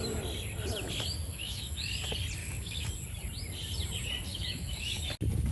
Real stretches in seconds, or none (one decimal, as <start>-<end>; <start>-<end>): 0.0-1.3; 1.9-2.4; 2.9-4.3; 5.0-5.5